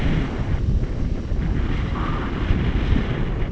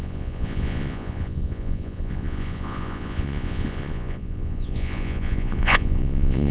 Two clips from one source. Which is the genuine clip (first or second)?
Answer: first